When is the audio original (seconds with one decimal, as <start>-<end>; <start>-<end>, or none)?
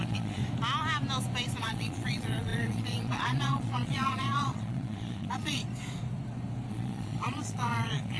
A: 0.4-1.6; 5.6-6.7